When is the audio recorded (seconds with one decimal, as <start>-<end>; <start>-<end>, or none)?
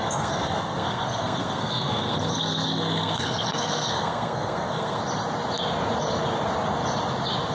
5.0-7.5